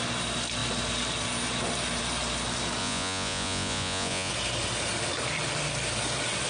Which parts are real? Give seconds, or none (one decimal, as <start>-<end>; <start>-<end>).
0.0-2.8; 4.3-6.5